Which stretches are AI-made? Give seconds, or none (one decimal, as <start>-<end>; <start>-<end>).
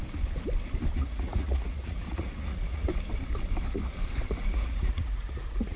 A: 0.9-2.9; 4.3-5.8